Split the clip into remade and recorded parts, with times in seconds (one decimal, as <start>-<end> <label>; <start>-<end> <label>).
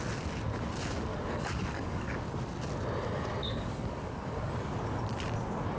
0.0-1.1 recorded; 1.1-2.2 remade; 2.2-3.4 recorded; 3.4-4.5 remade; 4.5-5.8 recorded